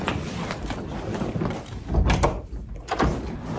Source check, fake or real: real